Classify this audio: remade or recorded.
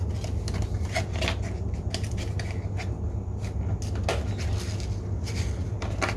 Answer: recorded